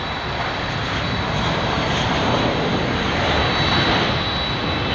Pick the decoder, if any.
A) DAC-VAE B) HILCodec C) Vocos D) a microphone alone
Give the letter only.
D